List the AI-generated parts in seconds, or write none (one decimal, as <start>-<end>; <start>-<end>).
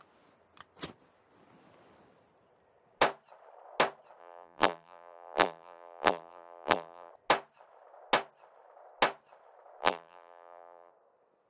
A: 4.2-7.1; 9.8-10.9